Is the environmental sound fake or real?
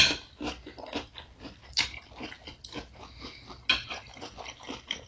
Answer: real